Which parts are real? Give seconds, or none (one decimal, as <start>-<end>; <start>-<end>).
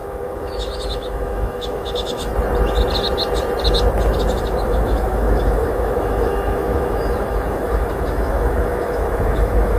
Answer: 2.3-4.4